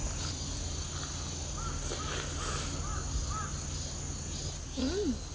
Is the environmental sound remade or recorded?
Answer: recorded